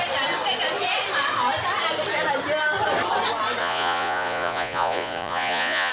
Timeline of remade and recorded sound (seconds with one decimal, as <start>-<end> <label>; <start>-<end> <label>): 0.0-3.6 recorded; 3.6-5.9 remade